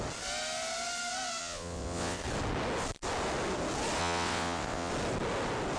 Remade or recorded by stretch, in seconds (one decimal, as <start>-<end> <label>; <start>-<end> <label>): 0.0-1.4 recorded; 1.4-2.2 remade; 2.2-4.0 recorded; 4.0-4.9 remade; 4.9-5.8 recorded

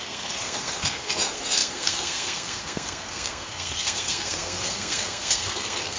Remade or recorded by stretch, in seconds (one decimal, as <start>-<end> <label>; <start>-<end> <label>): 0.0-6.0 remade